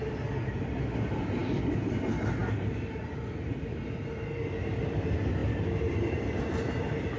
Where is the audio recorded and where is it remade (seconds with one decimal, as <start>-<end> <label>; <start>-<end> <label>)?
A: 0.0-1.4 recorded; 1.4-1.9 remade; 1.9-5.4 recorded; 5.4-6.8 remade; 6.8-7.2 recorded